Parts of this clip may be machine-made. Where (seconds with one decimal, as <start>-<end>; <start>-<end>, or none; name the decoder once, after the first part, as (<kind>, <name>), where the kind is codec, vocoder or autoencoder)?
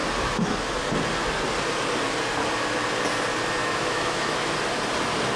3.6-4.5 (autoencoder, DAC-VAE)